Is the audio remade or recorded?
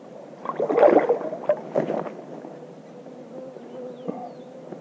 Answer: recorded